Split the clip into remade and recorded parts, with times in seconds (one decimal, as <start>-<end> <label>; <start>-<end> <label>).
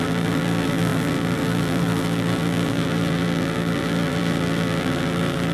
0.0-5.5 remade